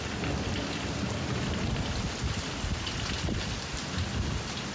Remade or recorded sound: recorded